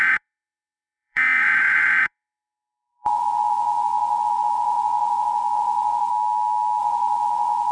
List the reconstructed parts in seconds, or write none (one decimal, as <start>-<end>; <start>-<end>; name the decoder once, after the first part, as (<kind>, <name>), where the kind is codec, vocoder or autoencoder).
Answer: 0.0-6.1 (vocoder, WaveNeXt); 6.8-7.7